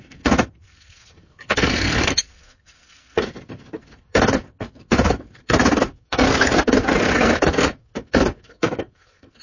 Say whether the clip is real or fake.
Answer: fake